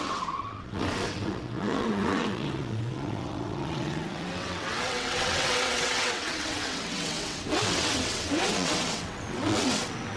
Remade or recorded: remade